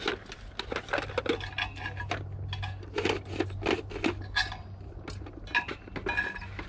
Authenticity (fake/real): real